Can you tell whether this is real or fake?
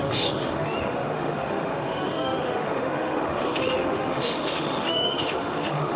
fake